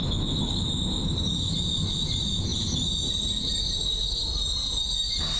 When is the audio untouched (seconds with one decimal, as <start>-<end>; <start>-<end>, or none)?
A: 0.0-5.4